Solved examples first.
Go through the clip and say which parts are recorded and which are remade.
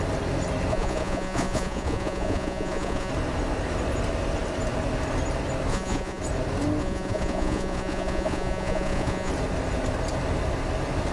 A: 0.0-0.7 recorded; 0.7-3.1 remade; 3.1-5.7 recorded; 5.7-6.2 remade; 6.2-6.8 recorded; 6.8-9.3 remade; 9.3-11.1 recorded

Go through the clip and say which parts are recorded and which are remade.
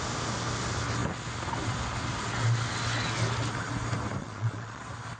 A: 0.0-4.2 recorded; 4.2-4.8 remade; 4.8-5.2 recorded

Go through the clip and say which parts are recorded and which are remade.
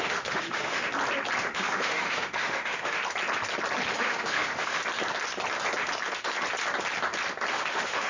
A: 0.0-0.9 remade; 0.9-1.4 recorded; 1.4-3.0 remade; 3.0-3.9 recorded; 3.9-4.8 remade; 4.8-7.5 recorded; 7.5-8.1 remade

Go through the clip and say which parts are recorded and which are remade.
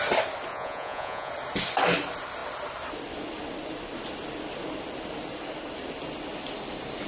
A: 0.0-0.5 recorded; 0.5-1.3 remade; 1.3-7.1 recorded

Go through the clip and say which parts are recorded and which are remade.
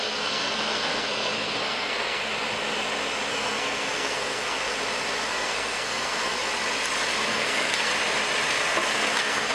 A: 0.0-2.3 remade; 2.3-3.3 recorded; 3.3-4.7 remade; 4.7-5.3 recorded; 5.3-6.4 remade; 6.4-7.3 recorded; 7.3-7.9 remade; 7.9-9.1 recorded; 9.1-9.5 remade